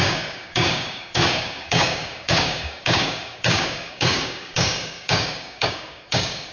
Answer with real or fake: fake